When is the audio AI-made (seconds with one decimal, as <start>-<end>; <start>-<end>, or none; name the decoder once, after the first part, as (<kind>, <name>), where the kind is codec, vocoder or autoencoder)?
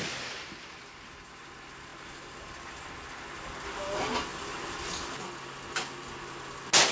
none